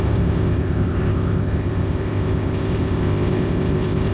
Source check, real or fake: fake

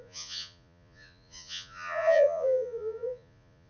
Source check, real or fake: fake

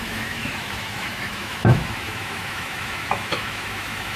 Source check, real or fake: fake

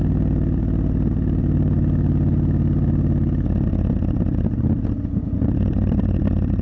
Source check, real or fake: real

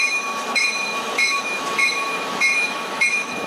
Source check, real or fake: fake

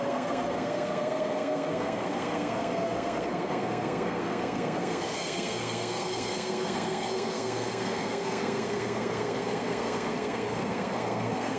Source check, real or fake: fake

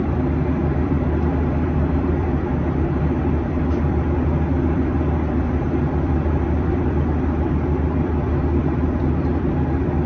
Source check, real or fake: fake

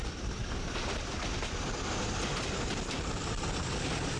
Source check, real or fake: fake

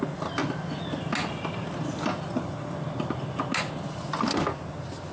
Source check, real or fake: real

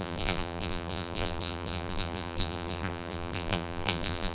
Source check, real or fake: fake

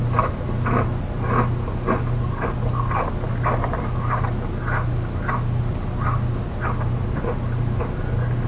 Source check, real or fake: real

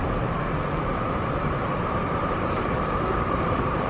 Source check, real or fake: fake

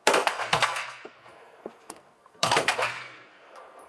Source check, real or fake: fake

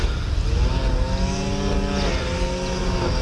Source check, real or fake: real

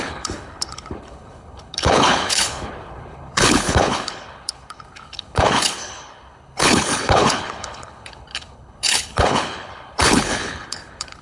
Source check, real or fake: fake